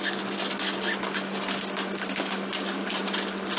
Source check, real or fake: real